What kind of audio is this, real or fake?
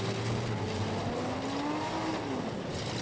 real